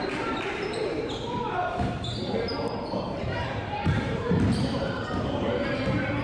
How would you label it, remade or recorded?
remade